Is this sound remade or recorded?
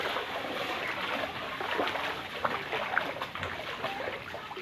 recorded